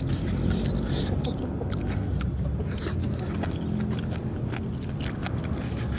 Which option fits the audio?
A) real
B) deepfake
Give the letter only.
A